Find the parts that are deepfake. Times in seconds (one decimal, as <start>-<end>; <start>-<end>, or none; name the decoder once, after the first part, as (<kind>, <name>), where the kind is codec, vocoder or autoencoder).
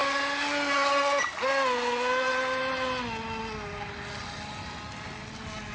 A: none